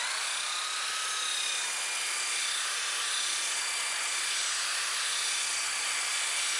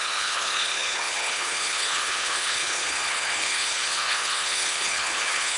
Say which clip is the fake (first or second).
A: second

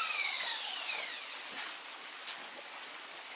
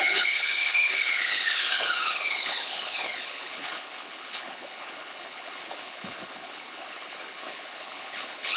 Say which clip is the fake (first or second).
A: second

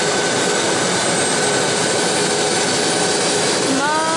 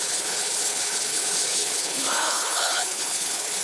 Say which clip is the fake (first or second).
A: second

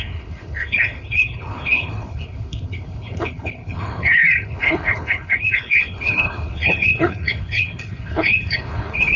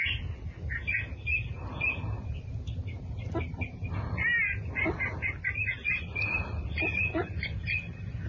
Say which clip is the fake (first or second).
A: first